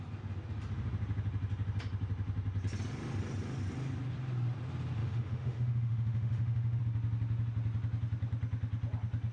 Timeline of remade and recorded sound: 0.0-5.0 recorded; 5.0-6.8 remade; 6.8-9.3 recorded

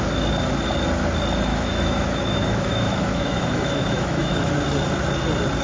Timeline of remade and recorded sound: 0.0-1.5 recorded; 1.5-4.5 remade; 4.5-5.6 recorded

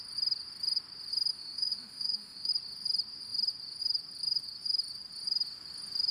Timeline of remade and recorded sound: 0.0-1.3 recorded; 1.3-2.5 remade; 2.5-6.1 recorded

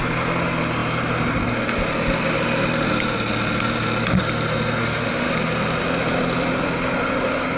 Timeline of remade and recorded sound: 0.0-4.8 recorded; 4.8-5.3 remade; 5.3-7.6 recorded

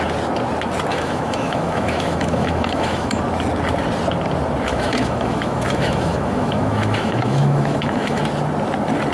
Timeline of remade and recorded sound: 0.0-0.9 recorded; 0.9-3.2 remade; 3.2-4.7 recorded; 4.7-8.2 remade; 8.2-9.1 recorded

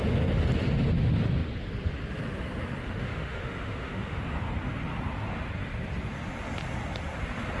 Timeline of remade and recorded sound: 0.0-2.8 recorded; 2.8-4.2 remade; 4.2-7.6 recorded